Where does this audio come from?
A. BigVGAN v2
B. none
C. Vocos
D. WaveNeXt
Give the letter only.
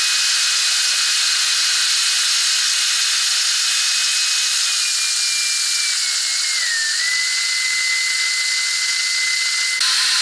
B